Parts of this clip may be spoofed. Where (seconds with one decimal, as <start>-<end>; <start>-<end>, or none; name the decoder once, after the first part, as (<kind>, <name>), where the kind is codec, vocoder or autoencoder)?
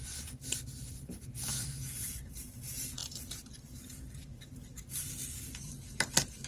0.0-6.5 (vocoder, BigVGAN v2)